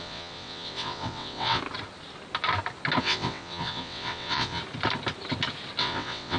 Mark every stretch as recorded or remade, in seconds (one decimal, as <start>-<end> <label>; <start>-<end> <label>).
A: 0.0-1.6 remade; 1.6-3.0 recorded; 3.0-4.6 remade; 4.6-5.8 recorded; 5.8-6.4 remade